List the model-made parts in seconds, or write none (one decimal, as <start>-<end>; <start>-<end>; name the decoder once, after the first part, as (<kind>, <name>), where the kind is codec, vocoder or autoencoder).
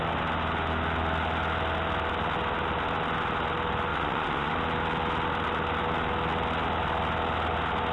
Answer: 3.9-4.5 (vocoder, Vocos)